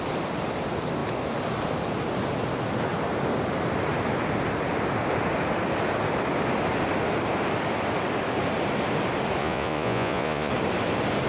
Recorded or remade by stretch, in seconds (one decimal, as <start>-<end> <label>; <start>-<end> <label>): 0.0-9.4 recorded; 9.4-10.5 remade; 10.5-11.3 recorded